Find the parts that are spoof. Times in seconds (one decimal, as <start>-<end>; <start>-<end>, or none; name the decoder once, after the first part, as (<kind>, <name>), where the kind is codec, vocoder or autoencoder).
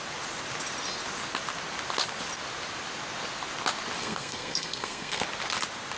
4.0-5.2 (codec, SNAC)